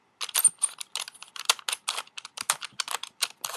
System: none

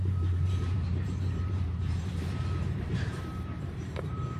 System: vocoder, BigVGAN v2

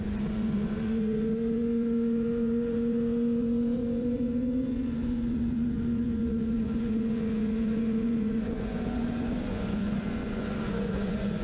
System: vocoder, Vocos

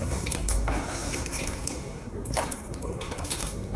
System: codec, SNAC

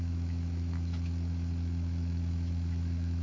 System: autoencoder, DAC-VAE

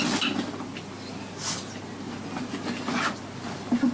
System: none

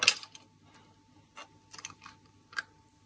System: none